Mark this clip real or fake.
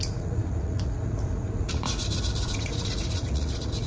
fake